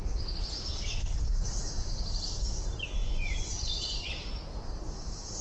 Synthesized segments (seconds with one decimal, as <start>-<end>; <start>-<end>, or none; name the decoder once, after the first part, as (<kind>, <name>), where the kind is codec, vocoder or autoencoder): 3.0-4.1 (vocoder, Vocos)

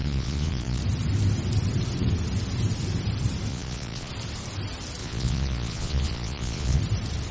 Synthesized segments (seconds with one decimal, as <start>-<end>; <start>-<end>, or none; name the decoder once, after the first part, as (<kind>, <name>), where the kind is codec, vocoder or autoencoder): 0.0-0.8 (vocoder, Vocos); 3.5-4.1; 5.0-6.8

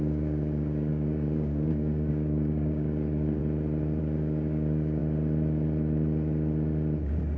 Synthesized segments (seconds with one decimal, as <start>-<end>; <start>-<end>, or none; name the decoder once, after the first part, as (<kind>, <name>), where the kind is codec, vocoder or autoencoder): 0.0-3.4 (codec, DAC); 4.0-5.0

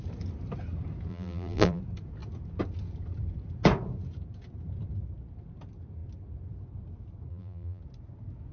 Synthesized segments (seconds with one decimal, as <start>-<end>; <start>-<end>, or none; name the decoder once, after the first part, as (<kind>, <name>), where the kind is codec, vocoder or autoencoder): 1.1-1.8 (vocoder, BigVGAN v2); 7.3-7.8